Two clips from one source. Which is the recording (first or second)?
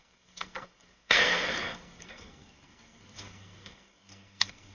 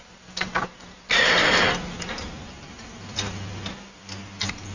second